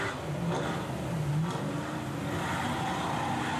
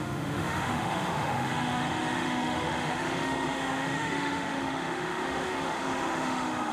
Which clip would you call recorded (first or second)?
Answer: first